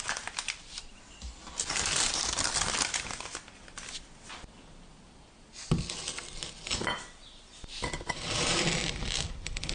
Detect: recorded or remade recorded